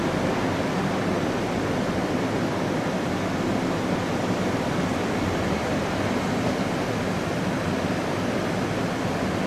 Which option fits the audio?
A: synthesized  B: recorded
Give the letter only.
B